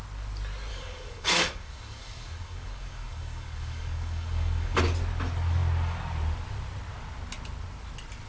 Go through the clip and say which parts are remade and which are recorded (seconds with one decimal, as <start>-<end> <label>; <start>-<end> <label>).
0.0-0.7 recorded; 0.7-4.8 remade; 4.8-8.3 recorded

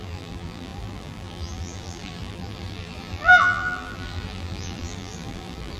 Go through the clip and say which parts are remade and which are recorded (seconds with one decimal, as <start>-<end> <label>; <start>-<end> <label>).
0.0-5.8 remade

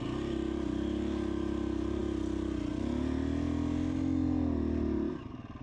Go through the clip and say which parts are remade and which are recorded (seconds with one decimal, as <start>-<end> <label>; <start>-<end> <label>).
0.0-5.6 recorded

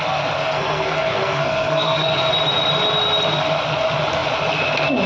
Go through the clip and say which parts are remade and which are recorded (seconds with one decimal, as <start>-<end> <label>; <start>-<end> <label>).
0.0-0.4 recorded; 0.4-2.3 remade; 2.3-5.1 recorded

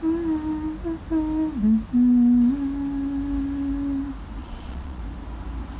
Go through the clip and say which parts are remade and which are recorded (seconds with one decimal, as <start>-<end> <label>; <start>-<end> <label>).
0.0-4.4 recorded; 4.4-5.0 remade; 5.0-5.8 recorded

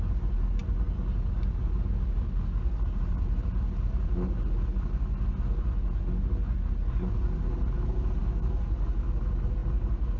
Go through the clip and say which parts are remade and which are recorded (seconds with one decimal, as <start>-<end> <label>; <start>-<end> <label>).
0.0-10.2 recorded

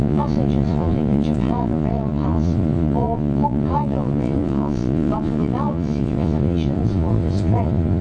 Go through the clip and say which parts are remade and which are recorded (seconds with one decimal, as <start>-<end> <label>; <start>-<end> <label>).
0.0-8.0 remade

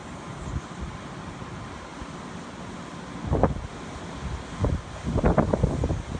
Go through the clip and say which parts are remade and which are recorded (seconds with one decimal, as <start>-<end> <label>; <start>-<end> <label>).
0.0-6.2 recorded